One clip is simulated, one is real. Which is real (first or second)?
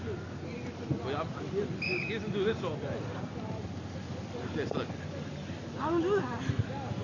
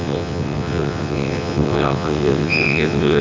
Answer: first